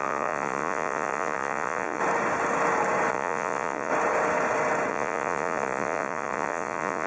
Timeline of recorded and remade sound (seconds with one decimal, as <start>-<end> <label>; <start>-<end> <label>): 0.0-2.0 remade; 2.0-3.1 recorded; 3.1-3.9 remade; 3.9-4.9 recorded; 4.9-7.1 remade